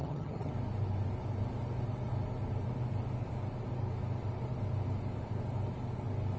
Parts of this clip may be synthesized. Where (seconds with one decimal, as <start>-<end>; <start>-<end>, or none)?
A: 0.0-0.5